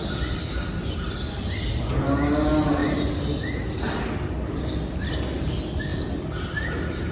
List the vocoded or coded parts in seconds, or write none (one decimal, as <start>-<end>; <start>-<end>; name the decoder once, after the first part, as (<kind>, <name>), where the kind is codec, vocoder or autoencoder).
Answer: none